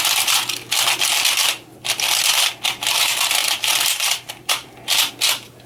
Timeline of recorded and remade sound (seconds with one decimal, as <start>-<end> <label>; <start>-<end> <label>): 0.0-3.4 recorded; 3.4-5.1 remade; 5.1-5.7 recorded